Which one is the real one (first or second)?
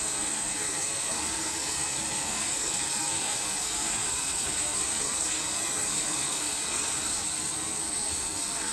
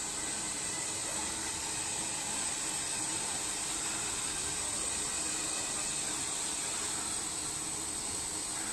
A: second